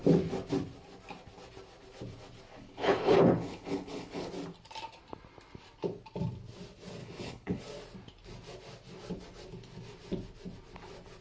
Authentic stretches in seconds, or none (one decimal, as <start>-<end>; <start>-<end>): 0.0-2.5; 4.3-7.0; 7.6-11.2